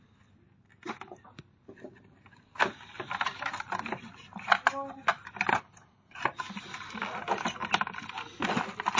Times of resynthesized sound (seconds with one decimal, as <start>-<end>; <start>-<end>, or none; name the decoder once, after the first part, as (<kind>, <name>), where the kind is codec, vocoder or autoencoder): 5.5-6.2 (codec, HILCodec)